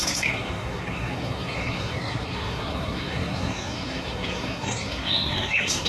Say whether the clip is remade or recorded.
remade